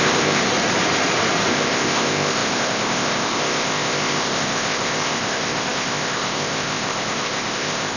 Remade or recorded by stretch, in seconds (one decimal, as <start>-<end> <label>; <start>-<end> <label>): 0.0-0.4 remade; 0.4-1.5 recorded; 1.5-8.0 remade